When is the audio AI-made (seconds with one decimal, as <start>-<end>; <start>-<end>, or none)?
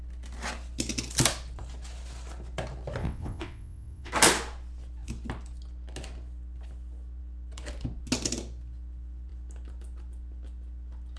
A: 3.0-4.1